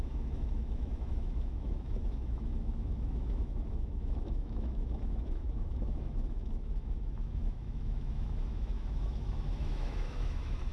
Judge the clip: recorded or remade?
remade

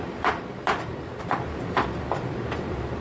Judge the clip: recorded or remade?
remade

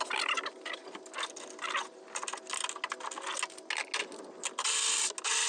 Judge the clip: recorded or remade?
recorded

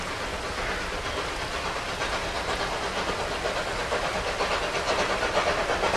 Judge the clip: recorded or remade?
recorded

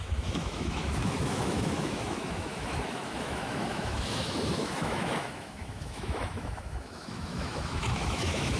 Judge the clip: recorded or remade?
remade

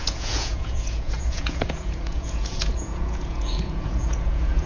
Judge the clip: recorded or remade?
remade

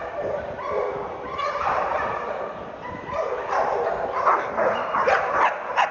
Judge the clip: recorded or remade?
remade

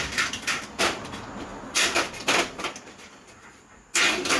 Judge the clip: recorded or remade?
recorded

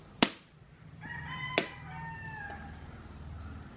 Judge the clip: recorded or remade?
recorded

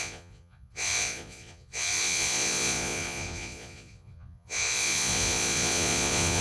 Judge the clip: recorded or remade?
remade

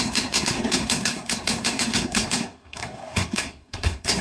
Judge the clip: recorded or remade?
remade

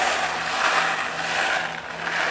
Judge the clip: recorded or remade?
recorded